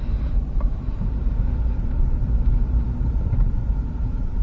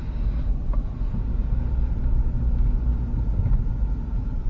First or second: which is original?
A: second